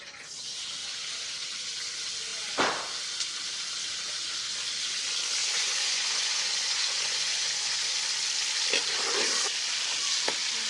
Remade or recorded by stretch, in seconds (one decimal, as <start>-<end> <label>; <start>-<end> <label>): 0.0-5.4 recorded; 5.4-7.9 remade; 7.9-10.7 recorded